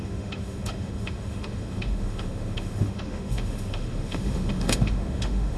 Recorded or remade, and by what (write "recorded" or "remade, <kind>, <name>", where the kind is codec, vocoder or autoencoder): remade, autoencoder, DAC-VAE